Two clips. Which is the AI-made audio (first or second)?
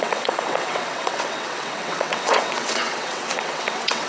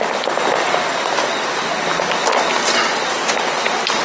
first